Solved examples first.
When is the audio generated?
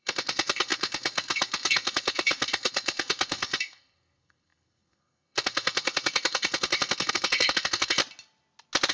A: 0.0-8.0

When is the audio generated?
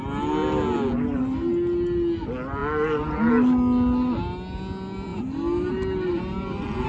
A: none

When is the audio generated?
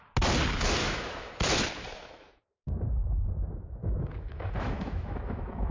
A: 0.8-1.4; 1.8-2.4; 3.8-5.7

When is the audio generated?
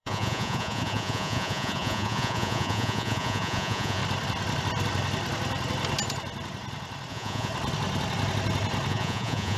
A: 0.0-4.0; 7.1-7.5; 8.9-9.6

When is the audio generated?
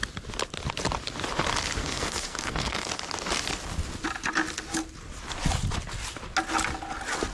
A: 1.8-2.9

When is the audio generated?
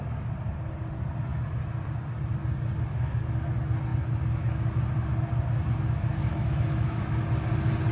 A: 6.3-7.0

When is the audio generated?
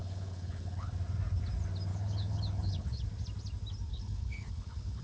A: 0.0-0.9; 1.9-3.0; 3.9-5.0